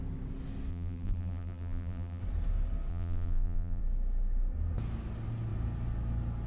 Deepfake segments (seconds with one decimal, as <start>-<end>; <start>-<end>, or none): 0.7-2.2; 2.9-3.8